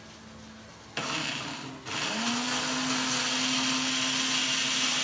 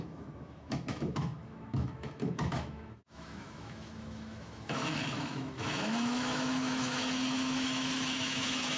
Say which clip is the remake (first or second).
second